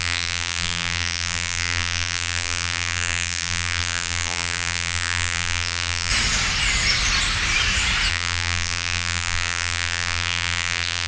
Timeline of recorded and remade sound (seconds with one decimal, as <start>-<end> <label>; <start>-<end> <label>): 0.0-6.1 remade; 6.1-8.1 recorded; 8.1-11.1 remade